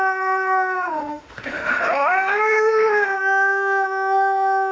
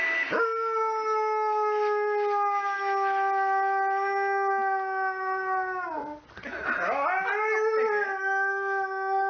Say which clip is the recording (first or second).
second